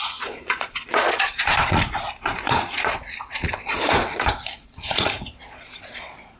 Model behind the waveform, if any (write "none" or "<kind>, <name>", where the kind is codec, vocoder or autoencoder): vocoder, Vocos